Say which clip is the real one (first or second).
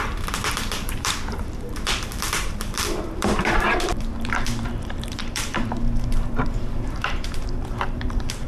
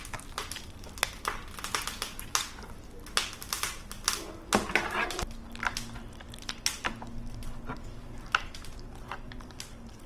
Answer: second